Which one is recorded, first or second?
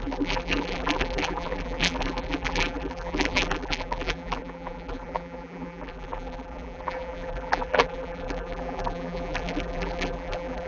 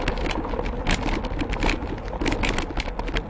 second